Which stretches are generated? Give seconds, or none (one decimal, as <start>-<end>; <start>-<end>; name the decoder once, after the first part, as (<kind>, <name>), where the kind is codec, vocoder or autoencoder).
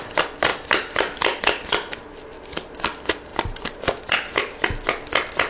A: 3.3-3.8 (vocoder, BigVGAN v2)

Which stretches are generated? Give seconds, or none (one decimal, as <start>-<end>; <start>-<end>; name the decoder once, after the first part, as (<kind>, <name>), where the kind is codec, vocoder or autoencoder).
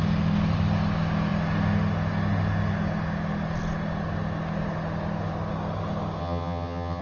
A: 6.2-7.0 (vocoder, HiFi-GAN)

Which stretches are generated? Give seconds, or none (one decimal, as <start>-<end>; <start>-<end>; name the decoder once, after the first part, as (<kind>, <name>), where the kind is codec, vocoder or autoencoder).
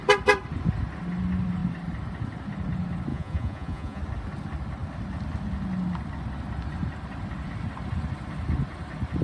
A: 3.1-4.0 (vocoder, Vocos)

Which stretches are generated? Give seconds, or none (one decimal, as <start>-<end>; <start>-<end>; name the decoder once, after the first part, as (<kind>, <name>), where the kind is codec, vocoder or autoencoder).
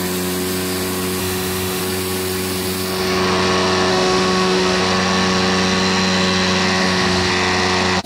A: 1.2-1.8 (autoencoder, DAC-VAE); 3.9-4.8; 6.8-7.3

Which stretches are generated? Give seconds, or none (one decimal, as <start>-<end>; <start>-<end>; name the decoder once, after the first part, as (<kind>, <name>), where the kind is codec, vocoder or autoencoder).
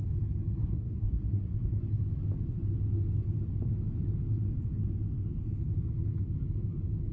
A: 0.6-1.8 (codec, SNAC)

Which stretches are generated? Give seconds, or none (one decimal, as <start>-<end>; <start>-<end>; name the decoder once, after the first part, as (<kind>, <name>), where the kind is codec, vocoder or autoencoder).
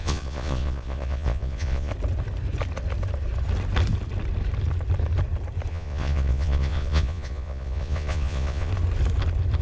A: 0.0-1.9 (vocoder, Vocos); 5.7-8.7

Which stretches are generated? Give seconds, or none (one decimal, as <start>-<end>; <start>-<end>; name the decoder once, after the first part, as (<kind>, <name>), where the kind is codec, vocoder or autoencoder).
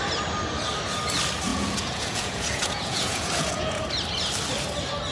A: 1.5-3.8 (vocoder, Vocos)